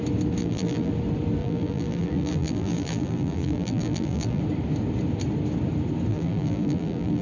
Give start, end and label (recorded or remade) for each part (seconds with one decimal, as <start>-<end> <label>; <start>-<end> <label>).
0.0-0.4 recorded; 0.4-0.9 remade; 0.9-1.4 recorded; 1.4-4.4 remade; 4.4-6.1 recorded; 6.1-7.2 remade